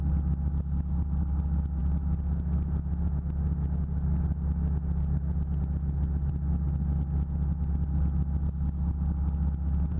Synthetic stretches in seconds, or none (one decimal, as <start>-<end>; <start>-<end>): none